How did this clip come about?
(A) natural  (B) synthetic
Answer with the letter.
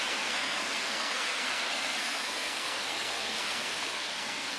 B